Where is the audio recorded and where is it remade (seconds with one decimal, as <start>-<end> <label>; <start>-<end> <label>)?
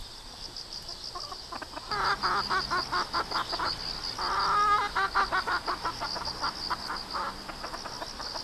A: 0.0-0.9 remade; 0.9-8.4 recorded